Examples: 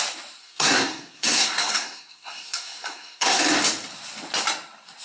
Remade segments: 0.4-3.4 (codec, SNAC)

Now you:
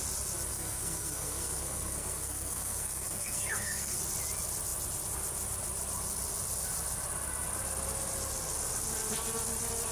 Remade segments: 0.5-4.0 (codec, SNAC)

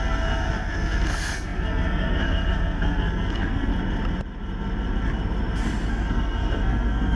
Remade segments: 0.0-3.7 (codec, SNAC); 5.9-7.2

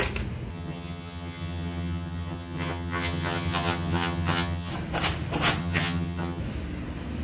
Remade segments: 0.5-4.7 (vocoder, HiFi-GAN); 5.6-6.4